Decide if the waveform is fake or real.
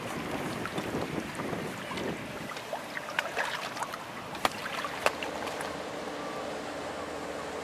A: real